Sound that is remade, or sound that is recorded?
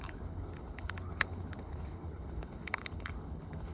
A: remade